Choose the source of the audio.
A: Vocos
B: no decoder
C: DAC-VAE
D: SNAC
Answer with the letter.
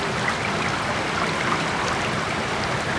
B